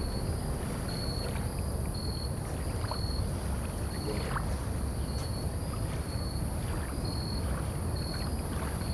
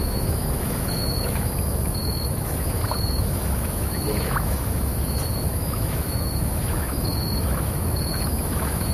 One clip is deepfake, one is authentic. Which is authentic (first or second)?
first